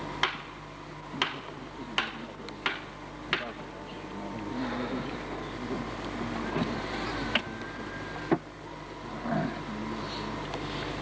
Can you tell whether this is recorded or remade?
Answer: recorded